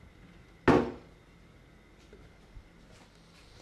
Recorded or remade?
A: recorded